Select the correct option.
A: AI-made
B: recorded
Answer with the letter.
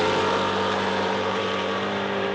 A